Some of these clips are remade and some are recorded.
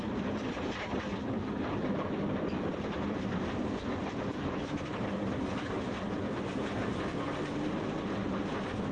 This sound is remade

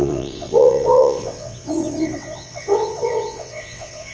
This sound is remade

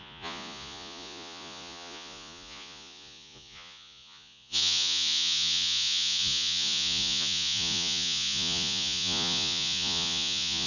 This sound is remade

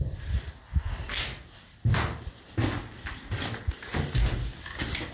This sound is recorded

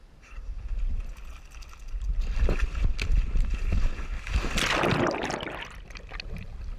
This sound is recorded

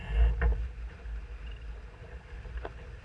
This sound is recorded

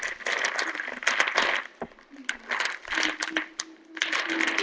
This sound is recorded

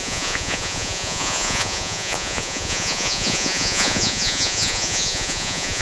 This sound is remade